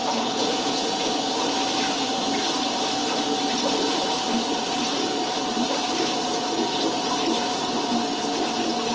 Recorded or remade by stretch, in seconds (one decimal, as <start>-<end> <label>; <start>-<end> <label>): 0.0-1.1 remade; 1.1-8.9 recorded